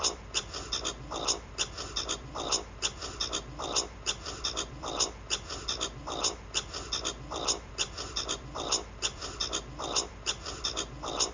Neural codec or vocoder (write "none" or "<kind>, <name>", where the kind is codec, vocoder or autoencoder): vocoder, BigVGAN v2